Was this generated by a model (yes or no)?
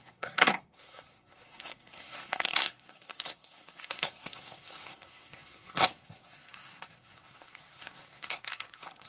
yes